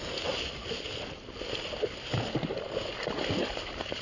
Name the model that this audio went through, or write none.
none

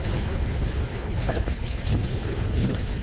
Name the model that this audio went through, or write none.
codec, HILCodec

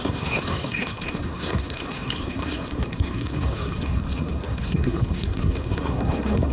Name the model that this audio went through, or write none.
codec, SNAC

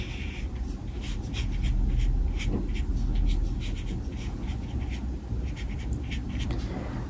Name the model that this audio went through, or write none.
none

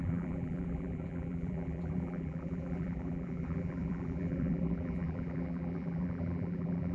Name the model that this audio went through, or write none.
vocoder, BigVGAN v2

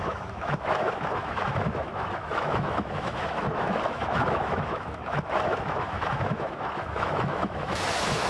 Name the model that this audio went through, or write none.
autoencoder, DAC-VAE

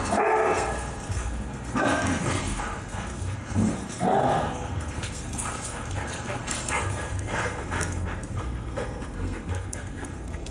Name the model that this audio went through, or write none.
codec, SNAC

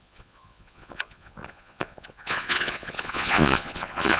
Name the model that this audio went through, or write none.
vocoder, Vocos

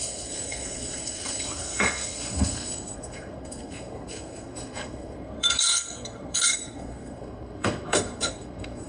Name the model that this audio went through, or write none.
codec, SNAC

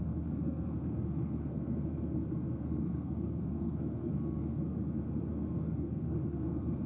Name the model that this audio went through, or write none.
codec, SNAC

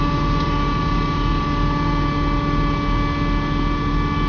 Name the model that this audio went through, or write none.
none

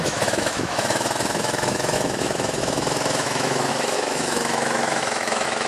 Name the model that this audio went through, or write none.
autoencoder, DAC-VAE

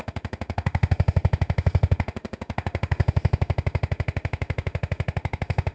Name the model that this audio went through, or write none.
autoencoder, DAC-VAE